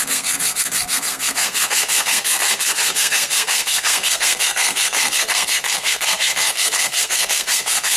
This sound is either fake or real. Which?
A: fake